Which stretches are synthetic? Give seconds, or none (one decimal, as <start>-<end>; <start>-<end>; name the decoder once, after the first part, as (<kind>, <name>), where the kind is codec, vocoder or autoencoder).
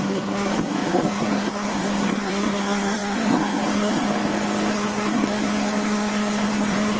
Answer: 0.0-4.1 (codec, SNAC); 4.7-7.0